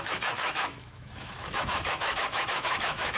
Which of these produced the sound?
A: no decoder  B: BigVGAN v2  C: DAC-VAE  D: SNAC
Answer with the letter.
C